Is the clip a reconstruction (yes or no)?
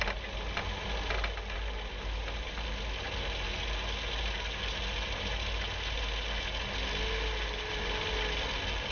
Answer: no